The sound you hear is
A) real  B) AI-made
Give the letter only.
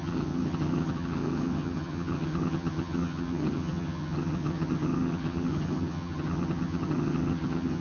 B